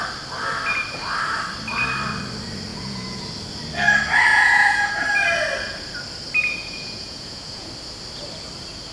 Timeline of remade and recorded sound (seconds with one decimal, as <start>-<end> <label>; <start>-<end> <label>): 0.0-2.7 recorded; 2.7-3.2 remade; 3.2-4.3 recorded; 4.3-4.9 remade; 4.9-6.6 recorded; 6.6-7.7 remade; 7.7-8.9 recorded